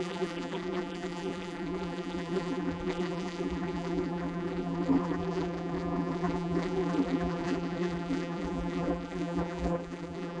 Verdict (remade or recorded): remade